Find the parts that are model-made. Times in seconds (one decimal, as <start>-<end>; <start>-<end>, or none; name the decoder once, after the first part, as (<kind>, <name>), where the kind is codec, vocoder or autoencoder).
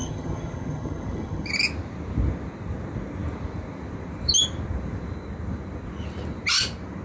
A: 0.0-1.5 (vocoder, HiFi-GAN)